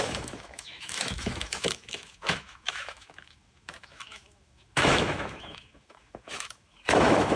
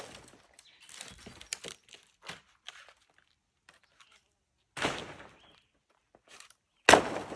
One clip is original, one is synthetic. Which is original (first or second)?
second